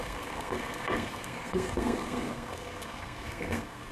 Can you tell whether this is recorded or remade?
remade